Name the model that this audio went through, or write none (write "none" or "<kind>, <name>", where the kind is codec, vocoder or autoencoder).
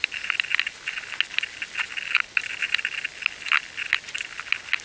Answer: none